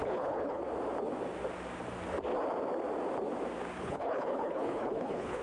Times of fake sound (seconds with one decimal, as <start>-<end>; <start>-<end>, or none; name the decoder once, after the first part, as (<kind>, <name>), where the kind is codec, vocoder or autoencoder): 0.0-0.6 (codec, HILCodec); 3.8-5.4